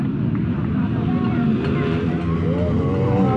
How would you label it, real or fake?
real